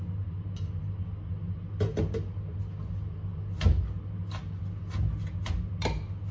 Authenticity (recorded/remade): recorded